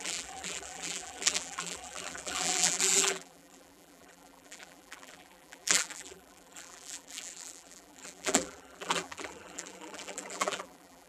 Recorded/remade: remade